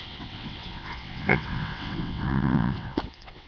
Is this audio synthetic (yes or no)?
yes